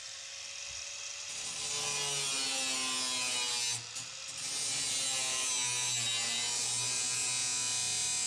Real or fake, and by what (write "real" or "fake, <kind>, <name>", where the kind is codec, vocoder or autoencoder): real